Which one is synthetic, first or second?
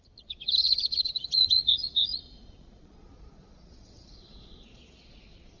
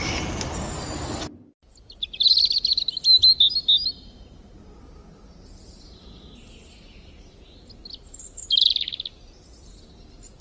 first